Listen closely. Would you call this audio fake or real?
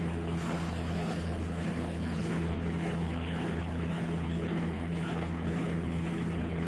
fake